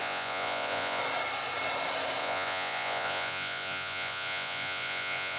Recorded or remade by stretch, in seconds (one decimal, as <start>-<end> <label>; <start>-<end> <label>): 0.0-1.0 remade; 1.0-2.2 recorded; 2.2-5.4 remade